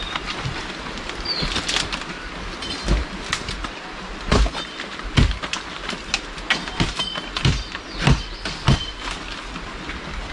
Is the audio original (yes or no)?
yes